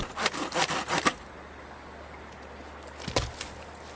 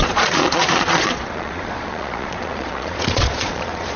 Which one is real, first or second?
first